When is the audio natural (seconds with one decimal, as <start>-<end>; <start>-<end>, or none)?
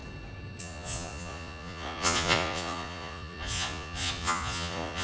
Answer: 0.0-0.6